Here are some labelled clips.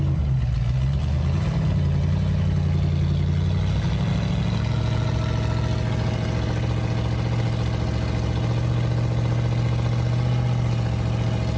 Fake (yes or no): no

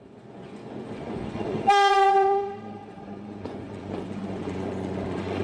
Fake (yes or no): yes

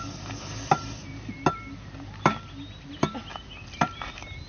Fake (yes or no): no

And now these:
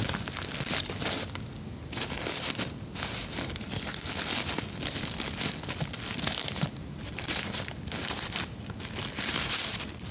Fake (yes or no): no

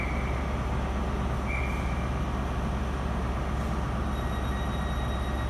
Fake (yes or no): no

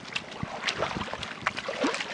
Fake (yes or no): no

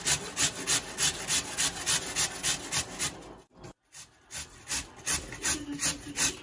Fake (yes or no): no